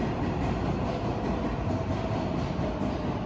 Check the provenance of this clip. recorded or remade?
recorded